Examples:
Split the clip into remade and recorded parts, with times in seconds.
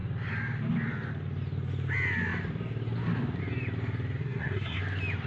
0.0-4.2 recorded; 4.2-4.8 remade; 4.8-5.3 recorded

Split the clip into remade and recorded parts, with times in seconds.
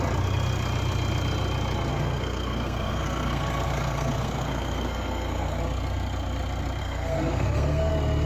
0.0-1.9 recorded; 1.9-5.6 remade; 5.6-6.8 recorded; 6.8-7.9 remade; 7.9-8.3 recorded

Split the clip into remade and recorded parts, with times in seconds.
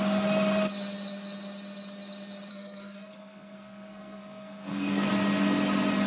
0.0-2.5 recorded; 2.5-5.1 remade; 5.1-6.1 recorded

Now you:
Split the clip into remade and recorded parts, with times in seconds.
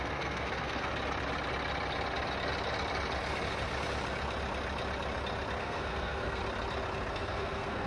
0.0-0.9 remade; 0.9-5.6 recorded; 5.6-6.4 remade; 6.4-7.1 recorded; 7.1-7.9 remade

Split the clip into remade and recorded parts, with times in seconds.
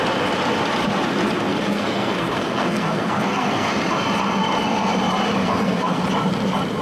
0.0-1.5 recorded; 1.5-3.7 remade; 3.7-5.4 recorded; 5.4-6.0 remade; 6.0-6.8 recorded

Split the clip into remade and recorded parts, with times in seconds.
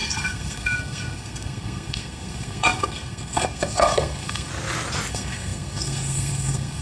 0.0-4.5 remade; 4.5-5.1 recorded; 5.1-6.8 remade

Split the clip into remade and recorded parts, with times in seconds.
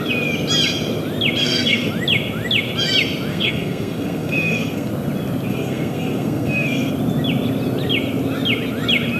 0.0-1.4 recorded; 1.4-1.9 remade; 1.9-3.3 recorded; 3.3-4.9 remade; 4.9-5.5 recorded; 5.5-6.9 remade; 6.9-9.2 recorded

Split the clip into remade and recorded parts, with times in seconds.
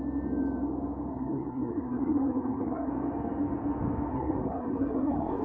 0.0-1.1 recorded; 1.1-2.9 remade; 2.9-4.1 recorded; 4.1-5.4 remade